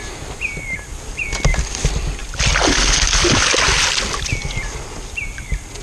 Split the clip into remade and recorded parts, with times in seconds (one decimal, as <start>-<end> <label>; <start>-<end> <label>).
0.0-5.8 recorded